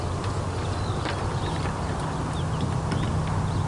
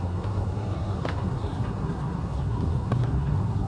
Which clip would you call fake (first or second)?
second